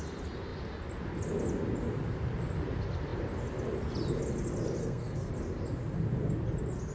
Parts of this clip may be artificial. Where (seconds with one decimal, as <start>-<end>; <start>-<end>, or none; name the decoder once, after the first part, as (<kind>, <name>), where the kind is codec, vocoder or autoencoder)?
4.8-5.3 (codec, SNAC)